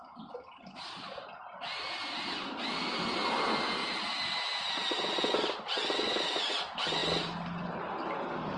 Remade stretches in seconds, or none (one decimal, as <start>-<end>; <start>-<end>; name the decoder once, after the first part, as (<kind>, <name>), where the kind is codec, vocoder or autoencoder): none